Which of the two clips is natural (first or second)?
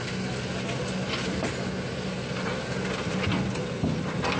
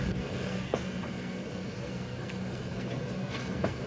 first